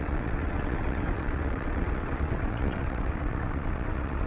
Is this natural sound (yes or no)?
no